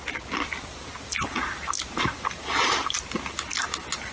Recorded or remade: recorded